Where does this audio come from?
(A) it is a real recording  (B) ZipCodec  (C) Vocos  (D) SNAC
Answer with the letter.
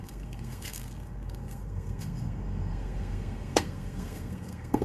D